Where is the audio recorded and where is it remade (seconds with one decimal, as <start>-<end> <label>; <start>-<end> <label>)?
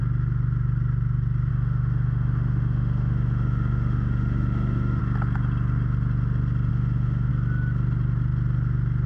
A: 0.0-1.5 recorded; 1.5-5.0 remade; 5.0-6.7 recorded; 6.7-7.3 remade; 7.3-9.1 recorded